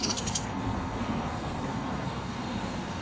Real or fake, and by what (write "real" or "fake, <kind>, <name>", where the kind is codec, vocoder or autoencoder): fake, codec, SNAC